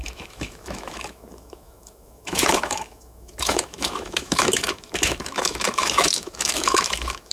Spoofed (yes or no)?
yes